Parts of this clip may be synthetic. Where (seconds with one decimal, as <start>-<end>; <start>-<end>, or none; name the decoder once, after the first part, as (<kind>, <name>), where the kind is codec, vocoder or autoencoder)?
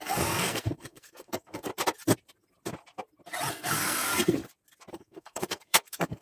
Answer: 0.0-1.7 (codec, SNAC); 3.5-4.4; 4.9-6.2